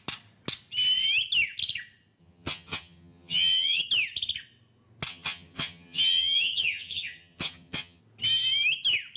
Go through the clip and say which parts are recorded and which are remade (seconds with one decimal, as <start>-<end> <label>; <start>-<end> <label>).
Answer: 0.0-2.2 recorded; 2.2-3.8 remade; 3.8-5.1 recorded; 5.1-8.0 remade; 8.0-9.2 recorded